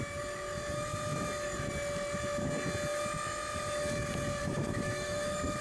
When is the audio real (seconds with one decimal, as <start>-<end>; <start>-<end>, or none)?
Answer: 0.0-4.4